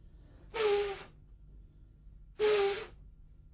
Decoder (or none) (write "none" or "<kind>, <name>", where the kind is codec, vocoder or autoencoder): none